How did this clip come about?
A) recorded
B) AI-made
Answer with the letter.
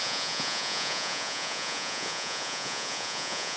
B